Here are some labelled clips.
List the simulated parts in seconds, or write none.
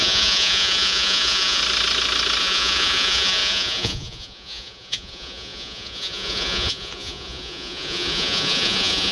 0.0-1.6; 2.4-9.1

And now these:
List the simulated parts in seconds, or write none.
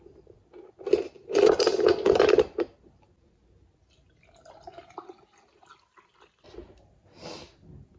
none